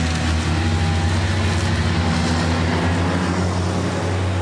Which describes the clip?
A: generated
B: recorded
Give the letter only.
B